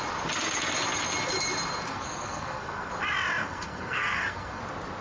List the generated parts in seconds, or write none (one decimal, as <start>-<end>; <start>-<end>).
1.9-2.9; 3.4-4.6